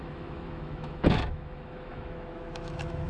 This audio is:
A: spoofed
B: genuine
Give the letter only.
A